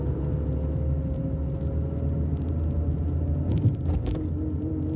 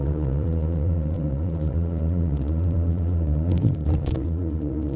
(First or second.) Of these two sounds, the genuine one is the first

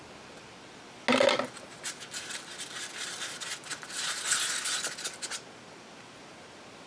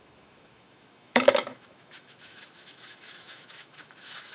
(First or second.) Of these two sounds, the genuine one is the first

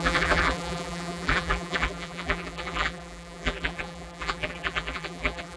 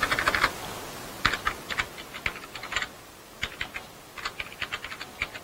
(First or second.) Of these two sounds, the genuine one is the second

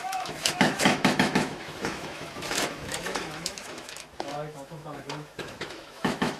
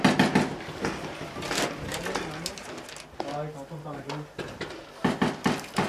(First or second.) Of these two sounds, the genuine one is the second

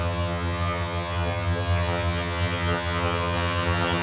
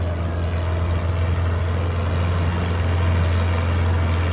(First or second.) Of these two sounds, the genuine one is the second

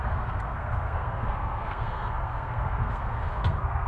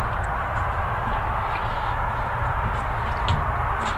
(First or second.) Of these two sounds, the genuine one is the second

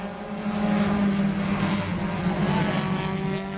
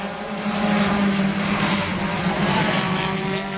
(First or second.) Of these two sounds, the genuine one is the first